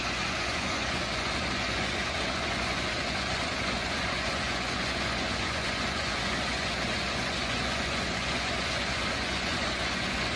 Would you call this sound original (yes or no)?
no